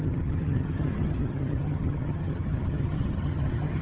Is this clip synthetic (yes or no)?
yes